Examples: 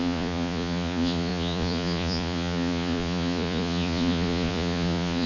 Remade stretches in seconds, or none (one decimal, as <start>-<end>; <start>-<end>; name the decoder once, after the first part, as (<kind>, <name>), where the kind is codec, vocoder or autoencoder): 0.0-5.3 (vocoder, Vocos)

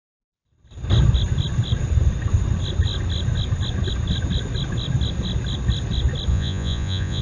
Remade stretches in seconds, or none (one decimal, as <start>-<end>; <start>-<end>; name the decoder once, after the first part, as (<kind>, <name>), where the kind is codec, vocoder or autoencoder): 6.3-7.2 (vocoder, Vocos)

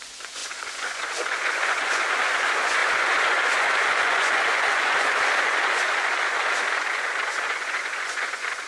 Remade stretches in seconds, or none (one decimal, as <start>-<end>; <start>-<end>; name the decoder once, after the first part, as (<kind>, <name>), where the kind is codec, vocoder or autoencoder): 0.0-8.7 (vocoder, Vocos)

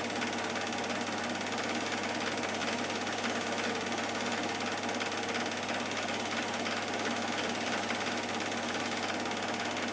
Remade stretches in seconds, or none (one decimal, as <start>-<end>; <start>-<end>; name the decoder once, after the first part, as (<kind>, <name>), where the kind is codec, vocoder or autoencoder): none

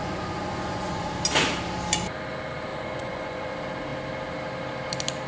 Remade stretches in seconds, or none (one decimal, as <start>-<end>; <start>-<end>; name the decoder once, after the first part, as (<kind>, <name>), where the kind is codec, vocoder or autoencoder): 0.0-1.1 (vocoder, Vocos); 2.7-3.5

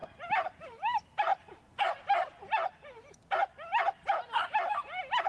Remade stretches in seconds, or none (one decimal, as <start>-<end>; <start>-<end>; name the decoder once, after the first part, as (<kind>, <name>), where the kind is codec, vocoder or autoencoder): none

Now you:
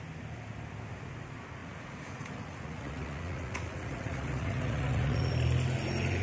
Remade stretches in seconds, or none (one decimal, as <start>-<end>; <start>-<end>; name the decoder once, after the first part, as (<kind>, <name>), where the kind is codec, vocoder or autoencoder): 1.6-5.3 (vocoder, Vocos)

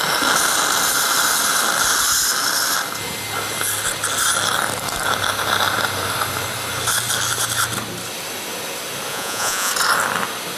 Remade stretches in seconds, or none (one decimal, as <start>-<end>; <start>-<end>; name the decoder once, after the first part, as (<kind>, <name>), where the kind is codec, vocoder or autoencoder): 9.1-9.7 (vocoder, Vocos)